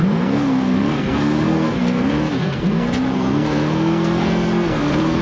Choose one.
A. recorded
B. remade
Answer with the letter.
B